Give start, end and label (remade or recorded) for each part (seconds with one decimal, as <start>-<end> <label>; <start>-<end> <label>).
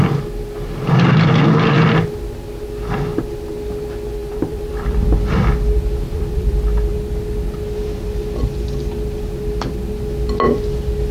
0.0-4.2 recorded; 4.2-6.9 remade; 6.9-11.1 recorded